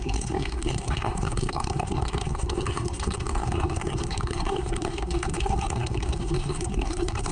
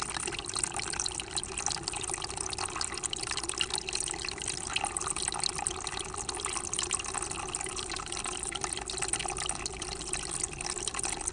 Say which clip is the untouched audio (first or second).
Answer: second